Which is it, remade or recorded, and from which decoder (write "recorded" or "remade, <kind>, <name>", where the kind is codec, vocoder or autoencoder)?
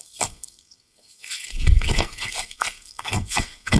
remade, codec, SNAC